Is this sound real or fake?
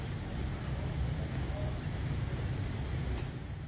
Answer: real